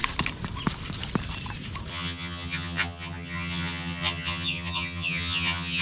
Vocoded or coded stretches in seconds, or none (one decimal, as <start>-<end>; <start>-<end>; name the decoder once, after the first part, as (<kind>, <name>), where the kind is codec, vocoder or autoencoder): 1.9-5.8 (vocoder, HiFi-GAN)